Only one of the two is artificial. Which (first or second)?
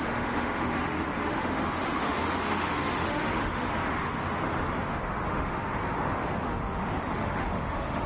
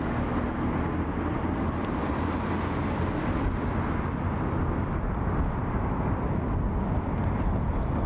first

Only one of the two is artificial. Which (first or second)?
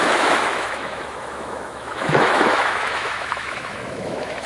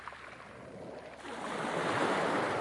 first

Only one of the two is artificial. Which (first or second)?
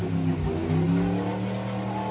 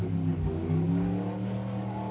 second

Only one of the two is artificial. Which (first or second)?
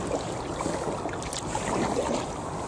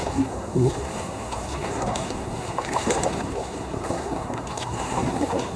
second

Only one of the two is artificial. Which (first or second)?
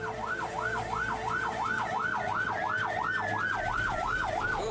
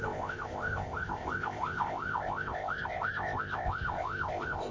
second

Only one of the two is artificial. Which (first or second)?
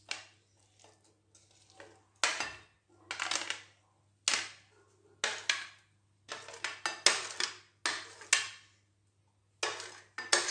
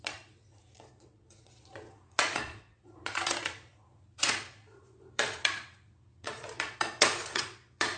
second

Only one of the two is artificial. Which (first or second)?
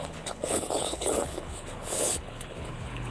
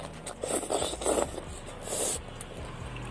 first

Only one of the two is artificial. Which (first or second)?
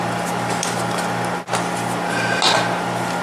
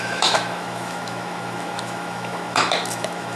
second